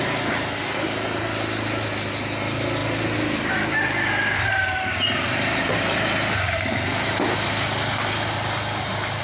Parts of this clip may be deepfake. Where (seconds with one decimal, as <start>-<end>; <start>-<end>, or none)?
none

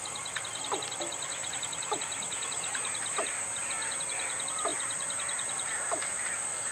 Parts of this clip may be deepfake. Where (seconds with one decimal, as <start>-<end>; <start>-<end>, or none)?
1.4-3.4

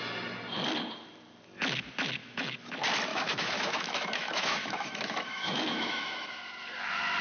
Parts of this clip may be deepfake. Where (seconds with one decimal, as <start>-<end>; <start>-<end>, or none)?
2.2-2.7; 3.1-6.3

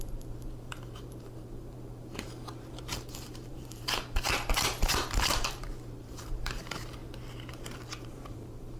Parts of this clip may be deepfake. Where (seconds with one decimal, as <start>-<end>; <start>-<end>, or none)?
0.0-7.0; 7.5-8.8

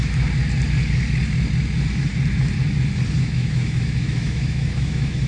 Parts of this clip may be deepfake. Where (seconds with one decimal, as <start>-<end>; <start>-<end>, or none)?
3.2-5.3

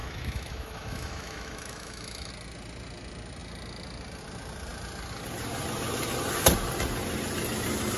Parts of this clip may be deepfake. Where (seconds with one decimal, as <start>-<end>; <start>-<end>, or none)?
0.0-2.3

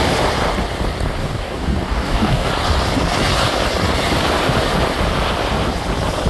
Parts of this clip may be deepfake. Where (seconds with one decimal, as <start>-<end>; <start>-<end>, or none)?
1.2-2.5